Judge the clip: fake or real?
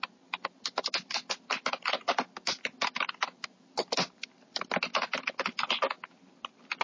real